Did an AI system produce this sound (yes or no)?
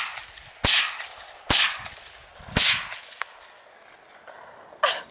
no